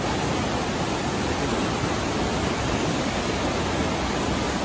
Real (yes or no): yes